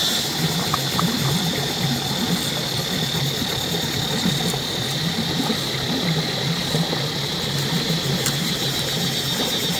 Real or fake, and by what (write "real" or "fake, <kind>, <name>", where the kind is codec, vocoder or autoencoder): real